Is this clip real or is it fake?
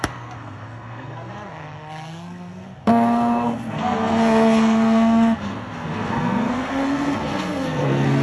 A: fake